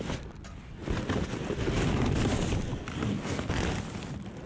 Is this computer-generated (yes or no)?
no